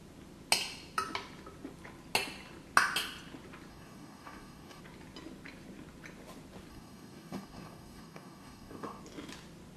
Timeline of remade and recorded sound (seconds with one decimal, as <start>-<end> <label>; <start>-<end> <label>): 0.0-3.7 recorded; 3.7-4.8 remade; 4.8-6.7 recorded; 6.7-9.0 remade; 9.0-9.8 recorded

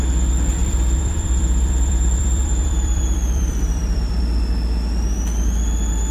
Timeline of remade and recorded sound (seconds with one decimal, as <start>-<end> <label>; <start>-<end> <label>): 0.0-0.6 recorded; 0.6-4.2 remade; 4.2-6.1 recorded

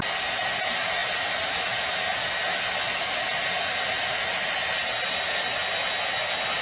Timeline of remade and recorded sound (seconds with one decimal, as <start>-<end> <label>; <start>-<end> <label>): 0.0-6.6 recorded

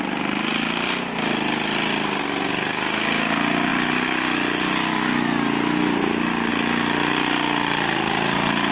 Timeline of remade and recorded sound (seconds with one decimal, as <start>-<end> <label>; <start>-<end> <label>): 0.0-8.7 recorded